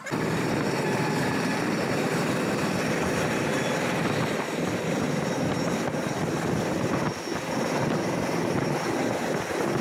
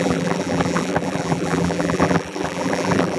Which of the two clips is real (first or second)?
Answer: first